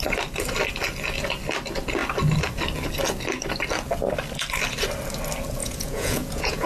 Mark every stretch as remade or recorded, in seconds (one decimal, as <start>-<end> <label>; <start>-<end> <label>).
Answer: 0.0-5.6 recorded; 5.6-6.7 remade

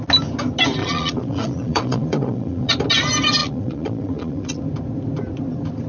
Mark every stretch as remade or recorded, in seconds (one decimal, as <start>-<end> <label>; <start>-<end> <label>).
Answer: 0.0-0.8 recorded; 0.8-2.7 remade; 2.7-3.4 recorded; 3.4-4.6 remade; 4.6-5.9 recorded

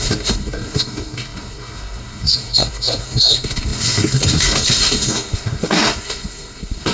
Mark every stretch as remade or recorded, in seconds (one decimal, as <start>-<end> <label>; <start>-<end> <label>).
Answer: 0.0-6.9 remade